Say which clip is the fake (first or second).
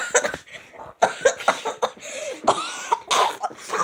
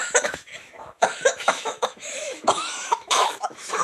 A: second